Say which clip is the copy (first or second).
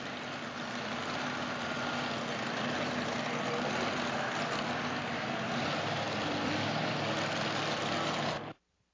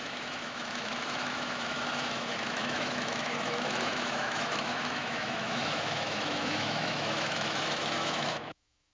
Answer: second